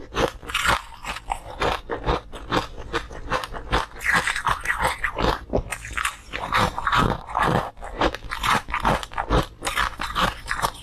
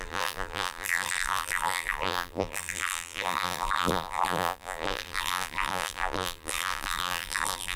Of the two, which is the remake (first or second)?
second